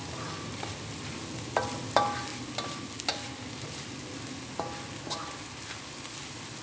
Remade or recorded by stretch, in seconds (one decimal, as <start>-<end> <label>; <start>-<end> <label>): 0.0-6.6 recorded